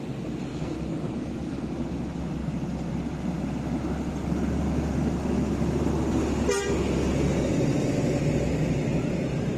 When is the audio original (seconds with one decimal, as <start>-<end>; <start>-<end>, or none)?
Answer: 0.0-0.5; 1.7-9.6

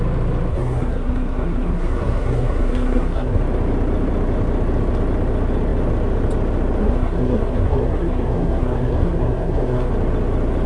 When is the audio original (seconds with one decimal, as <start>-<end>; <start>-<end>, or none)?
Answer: 0.0-0.5; 3.4-6.8; 9.9-10.7